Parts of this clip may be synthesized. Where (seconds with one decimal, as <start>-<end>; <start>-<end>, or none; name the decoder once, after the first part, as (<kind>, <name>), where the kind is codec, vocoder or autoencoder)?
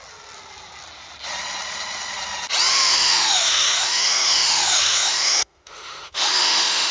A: 2.7-6.9 (autoencoder, DAC-VAE)